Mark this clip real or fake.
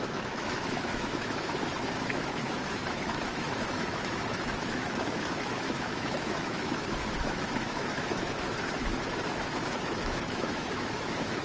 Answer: fake